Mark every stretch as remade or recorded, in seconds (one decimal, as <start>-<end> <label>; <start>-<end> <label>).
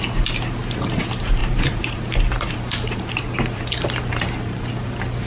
0.0-1.4 recorded; 1.4-4.6 remade; 4.6-5.3 recorded